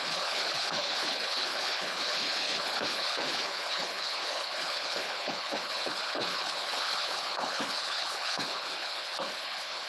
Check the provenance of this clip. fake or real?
fake